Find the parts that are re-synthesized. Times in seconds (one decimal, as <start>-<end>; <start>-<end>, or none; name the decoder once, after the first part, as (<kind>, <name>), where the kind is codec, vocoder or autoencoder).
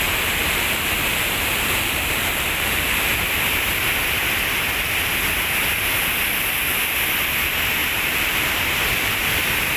0.4-3.1 (vocoder, BigVGAN v2); 7.8-8.5